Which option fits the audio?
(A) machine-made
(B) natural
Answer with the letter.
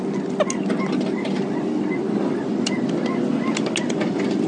B